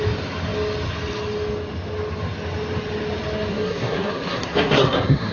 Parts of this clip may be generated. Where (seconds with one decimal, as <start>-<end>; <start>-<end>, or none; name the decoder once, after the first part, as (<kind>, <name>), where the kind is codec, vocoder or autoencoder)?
3.5-5.3 (codec, SNAC)